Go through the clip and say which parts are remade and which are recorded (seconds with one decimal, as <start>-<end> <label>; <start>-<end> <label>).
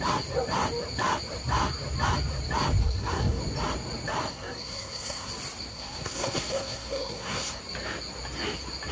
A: 0.0-2.8 recorded; 2.8-3.4 remade; 3.4-4.3 recorded; 4.3-5.3 remade; 5.3-5.7 recorded; 5.7-7.6 remade; 7.6-8.9 recorded